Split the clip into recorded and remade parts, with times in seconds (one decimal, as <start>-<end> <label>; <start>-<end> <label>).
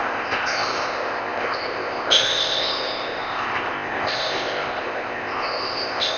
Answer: 0.0-6.2 remade